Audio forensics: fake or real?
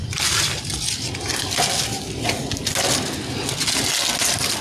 real